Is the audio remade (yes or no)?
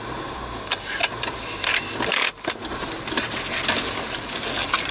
no